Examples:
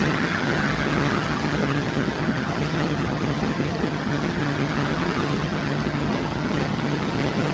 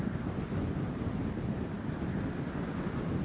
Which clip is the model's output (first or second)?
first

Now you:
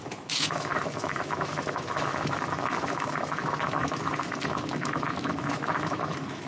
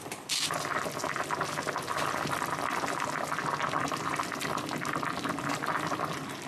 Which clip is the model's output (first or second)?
first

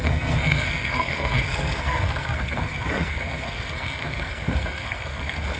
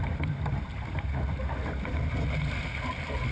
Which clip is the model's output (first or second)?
first